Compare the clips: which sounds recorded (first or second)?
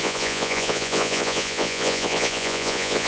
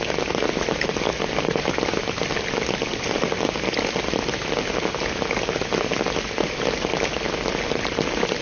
second